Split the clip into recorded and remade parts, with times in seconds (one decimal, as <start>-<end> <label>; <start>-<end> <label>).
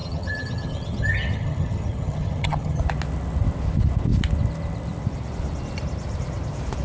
0.0-2.8 remade; 2.8-6.8 recorded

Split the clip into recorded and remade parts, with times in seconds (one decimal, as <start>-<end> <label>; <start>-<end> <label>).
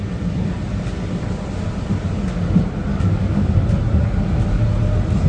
0.0-2.9 recorded; 2.9-3.5 remade; 3.5-5.3 recorded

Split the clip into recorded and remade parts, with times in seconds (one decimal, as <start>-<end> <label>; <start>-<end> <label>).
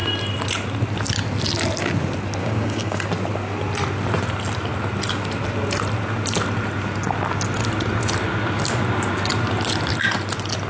0.0-2.4 recorded; 2.4-3.1 remade; 3.1-10.7 recorded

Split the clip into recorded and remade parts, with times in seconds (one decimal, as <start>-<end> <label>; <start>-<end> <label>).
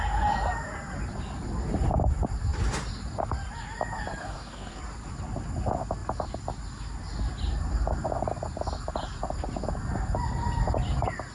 0.0-4.2 recorded; 4.2-4.8 remade; 4.8-11.3 recorded